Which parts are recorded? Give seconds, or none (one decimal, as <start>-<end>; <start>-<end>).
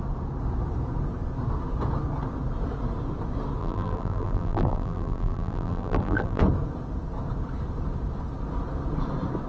0.0-3.6; 6.4-9.5